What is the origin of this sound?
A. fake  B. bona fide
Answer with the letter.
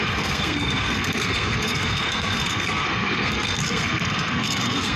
A